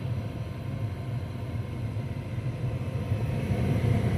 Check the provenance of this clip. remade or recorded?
recorded